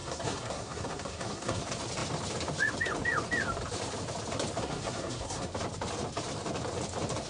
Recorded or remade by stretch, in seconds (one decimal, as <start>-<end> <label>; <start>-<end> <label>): 0.0-1.6 remade; 1.6-4.6 recorded; 4.6-5.5 remade; 5.5-7.3 recorded